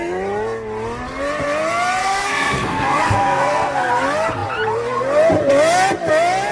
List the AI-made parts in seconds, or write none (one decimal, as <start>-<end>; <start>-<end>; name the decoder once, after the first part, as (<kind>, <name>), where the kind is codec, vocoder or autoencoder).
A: 2.0-3.9 (codec, SNAC)